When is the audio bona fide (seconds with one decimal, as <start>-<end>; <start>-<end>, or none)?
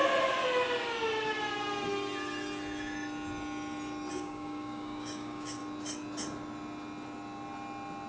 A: 0.0-4.1; 5.6-8.1